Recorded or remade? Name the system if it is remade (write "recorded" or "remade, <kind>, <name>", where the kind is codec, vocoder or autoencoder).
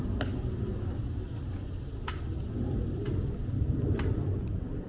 recorded